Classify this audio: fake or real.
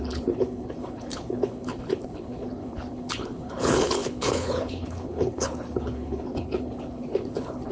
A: fake